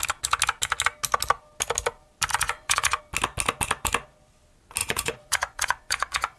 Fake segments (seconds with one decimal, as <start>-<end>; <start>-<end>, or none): 2.3-3.0; 4.8-6.4